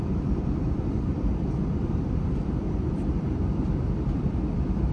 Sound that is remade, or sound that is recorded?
remade